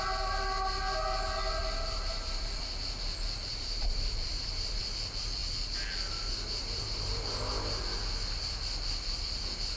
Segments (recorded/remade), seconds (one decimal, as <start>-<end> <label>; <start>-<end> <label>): 0.0-1.6 recorded; 1.6-2.6 remade; 2.6-3.5 recorded; 3.5-4.8 remade; 4.8-6.6 recorded; 6.6-7.5 remade; 7.5-9.8 recorded